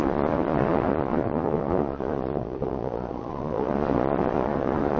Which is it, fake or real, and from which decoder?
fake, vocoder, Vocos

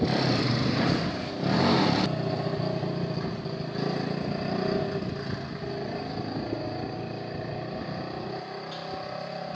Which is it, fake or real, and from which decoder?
real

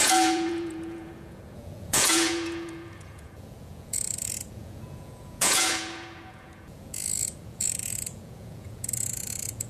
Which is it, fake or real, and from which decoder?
fake, vocoder, Vocos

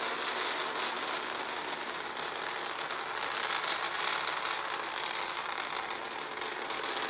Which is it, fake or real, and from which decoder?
real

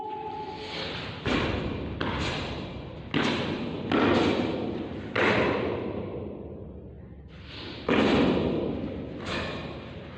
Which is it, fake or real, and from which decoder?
real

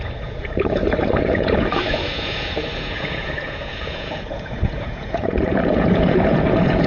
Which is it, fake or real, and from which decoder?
fake, vocoder, Vocos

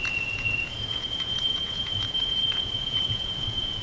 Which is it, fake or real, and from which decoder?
fake, vocoder, Vocos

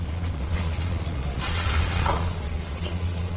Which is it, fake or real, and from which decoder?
fake, vocoder, Vocos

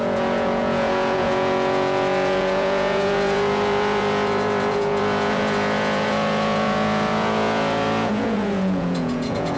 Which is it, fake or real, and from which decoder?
fake, vocoder, Vocos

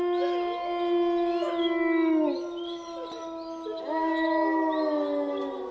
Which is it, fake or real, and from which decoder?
real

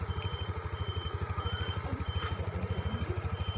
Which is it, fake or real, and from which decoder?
fake, vocoder, Vocos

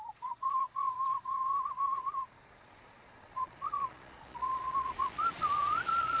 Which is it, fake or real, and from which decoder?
fake, vocoder, Vocos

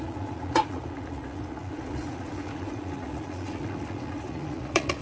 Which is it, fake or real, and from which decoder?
fake, vocoder, Vocos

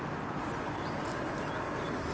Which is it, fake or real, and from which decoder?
real